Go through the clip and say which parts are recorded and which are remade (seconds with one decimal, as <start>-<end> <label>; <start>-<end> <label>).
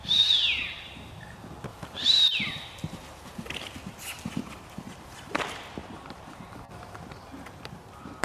0.0-1.7 recorded; 1.7-2.5 remade; 2.5-5.8 recorded; 5.8-6.5 remade; 6.5-8.2 recorded